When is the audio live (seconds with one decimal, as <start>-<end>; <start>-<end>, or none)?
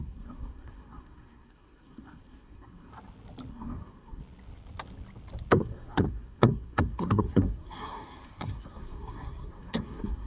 2.9-3.5; 4.2-5.5